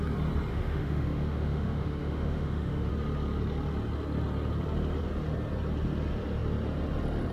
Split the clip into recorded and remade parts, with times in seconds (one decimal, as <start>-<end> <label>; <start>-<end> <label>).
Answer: 0.0-0.5 recorded; 0.5-2.9 remade; 2.9-7.3 recorded